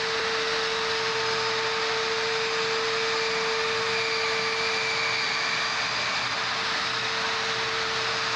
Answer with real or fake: real